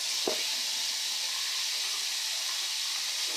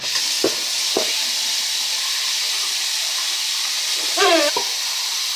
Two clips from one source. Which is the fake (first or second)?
second